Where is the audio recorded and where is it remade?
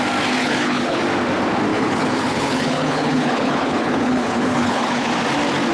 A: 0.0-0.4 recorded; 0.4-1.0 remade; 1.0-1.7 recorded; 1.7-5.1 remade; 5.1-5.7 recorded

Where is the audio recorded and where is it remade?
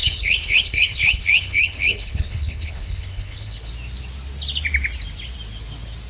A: 0.0-3.7 remade; 3.7-6.1 recorded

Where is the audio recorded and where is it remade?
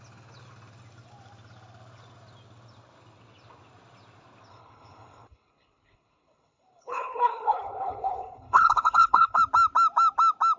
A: 0.0-4.5 recorded; 4.5-9.4 remade; 9.4-10.6 recorded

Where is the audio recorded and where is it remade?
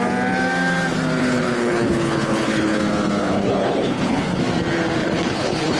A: 0.0-1.2 recorded; 1.2-2.8 remade; 2.8-3.2 recorded; 3.2-4.4 remade; 4.4-5.0 recorded; 5.0-5.8 remade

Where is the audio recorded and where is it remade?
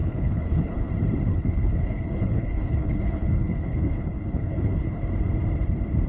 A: 0.0-0.9 remade; 0.9-1.3 recorded; 1.3-5.0 remade; 5.0-6.1 recorded